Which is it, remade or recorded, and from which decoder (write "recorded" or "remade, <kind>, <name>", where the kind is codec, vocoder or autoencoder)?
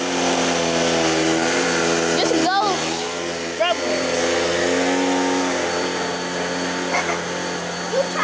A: recorded